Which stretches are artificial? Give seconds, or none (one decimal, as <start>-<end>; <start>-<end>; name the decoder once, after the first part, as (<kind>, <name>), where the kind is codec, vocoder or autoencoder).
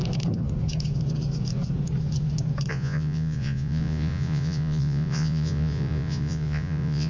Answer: 2.7-7.1 (vocoder, Vocos)